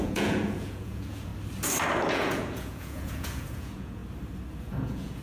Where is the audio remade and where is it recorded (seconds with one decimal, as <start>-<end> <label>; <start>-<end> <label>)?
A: 0.0-1.3 remade; 1.3-2.1 recorded; 2.1-4.0 remade; 4.0-4.6 recorded; 4.6-5.2 remade